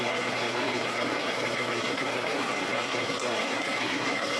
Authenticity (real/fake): fake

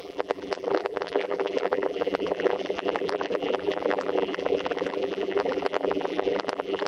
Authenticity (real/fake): fake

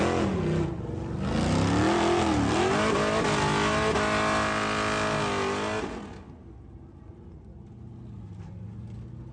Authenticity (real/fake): real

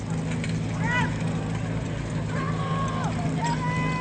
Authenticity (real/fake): real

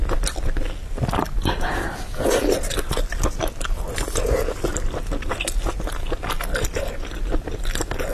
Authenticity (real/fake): real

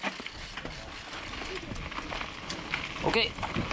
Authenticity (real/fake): real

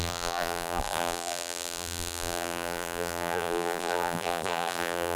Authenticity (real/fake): fake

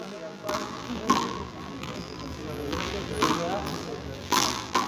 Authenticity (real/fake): fake